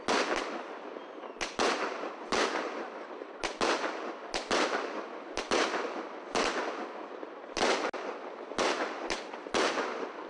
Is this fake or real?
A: real